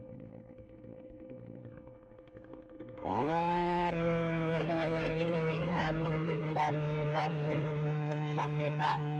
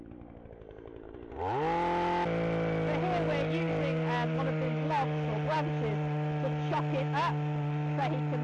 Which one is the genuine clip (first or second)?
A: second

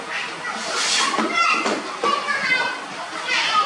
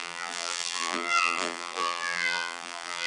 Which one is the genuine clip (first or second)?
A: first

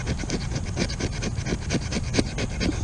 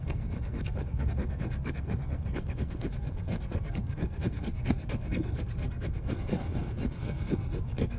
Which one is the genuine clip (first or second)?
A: first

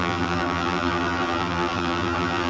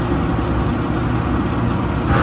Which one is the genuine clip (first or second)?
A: second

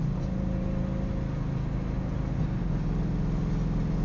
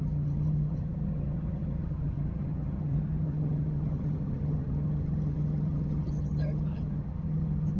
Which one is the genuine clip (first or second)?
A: first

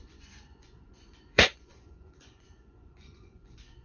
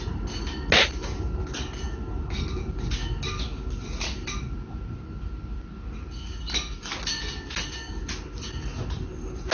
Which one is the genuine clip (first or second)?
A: second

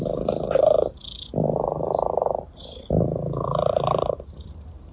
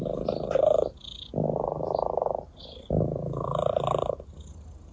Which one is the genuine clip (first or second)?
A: second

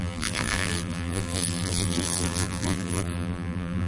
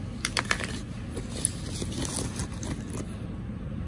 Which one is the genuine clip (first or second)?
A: second